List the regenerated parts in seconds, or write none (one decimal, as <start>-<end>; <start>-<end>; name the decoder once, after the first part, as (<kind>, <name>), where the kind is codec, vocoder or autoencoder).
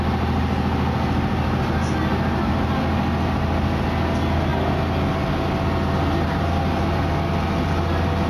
none